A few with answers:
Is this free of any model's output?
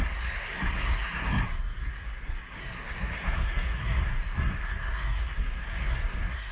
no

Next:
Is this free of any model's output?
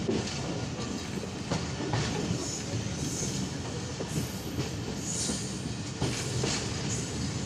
yes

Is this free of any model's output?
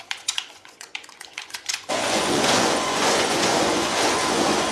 no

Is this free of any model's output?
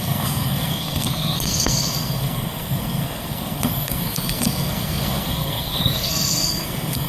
no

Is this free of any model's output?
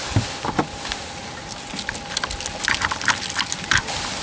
yes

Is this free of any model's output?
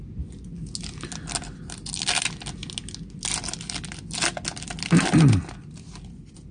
yes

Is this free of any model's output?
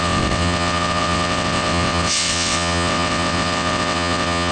no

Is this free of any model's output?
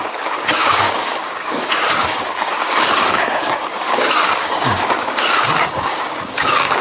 no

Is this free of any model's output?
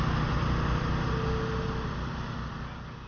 yes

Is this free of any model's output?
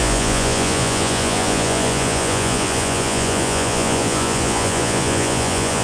no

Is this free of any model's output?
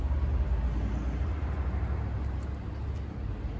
yes